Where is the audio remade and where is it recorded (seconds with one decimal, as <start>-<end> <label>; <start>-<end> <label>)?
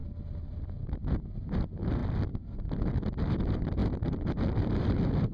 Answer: 0.0-0.8 recorded; 0.8-2.0 remade; 2.0-2.5 recorded; 2.5-3.8 remade; 3.8-4.6 recorded; 4.6-5.3 remade